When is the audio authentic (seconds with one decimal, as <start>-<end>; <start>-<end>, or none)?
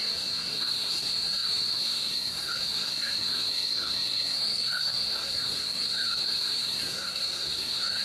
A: none